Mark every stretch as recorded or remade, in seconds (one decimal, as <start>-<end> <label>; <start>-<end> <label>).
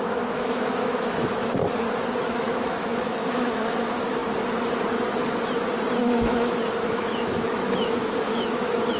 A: 0.0-1.6 remade; 1.6-2.2 recorded; 2.2-4.2 remade; 4.2-6.0 recorded; 6.0-9.0 remade